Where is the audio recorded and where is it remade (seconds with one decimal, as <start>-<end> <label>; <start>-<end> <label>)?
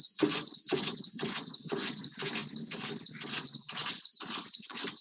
0.0-2.4 remade; 2.4-3.3 recorded; 3.3-3.8 remade; 3.8-4.5 recorded; 4.5-5.0 remade